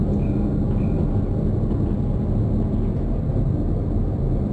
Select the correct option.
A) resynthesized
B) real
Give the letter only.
B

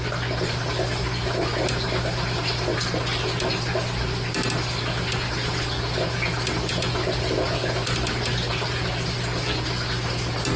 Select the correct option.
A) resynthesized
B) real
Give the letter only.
B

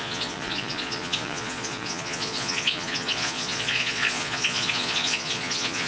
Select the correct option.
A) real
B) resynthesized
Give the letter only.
B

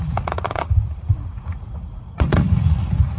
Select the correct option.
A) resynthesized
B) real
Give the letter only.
A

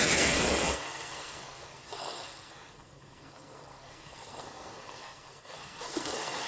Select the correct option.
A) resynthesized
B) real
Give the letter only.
A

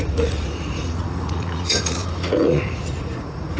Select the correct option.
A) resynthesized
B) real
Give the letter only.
A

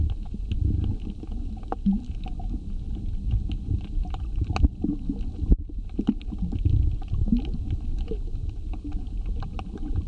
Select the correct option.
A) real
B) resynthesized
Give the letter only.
A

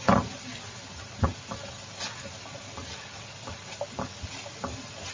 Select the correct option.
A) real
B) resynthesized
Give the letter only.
A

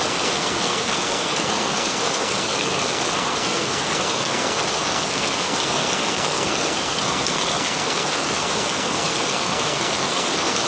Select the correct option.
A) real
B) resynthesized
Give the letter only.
B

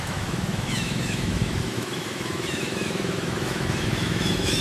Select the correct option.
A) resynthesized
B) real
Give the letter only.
A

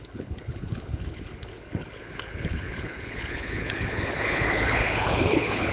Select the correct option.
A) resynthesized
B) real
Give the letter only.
A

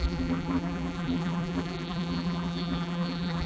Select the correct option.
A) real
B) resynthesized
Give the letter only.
B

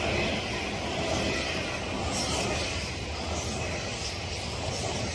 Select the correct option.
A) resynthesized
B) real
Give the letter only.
B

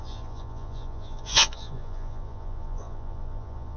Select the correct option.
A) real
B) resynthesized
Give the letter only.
B